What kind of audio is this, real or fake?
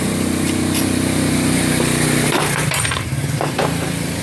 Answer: fake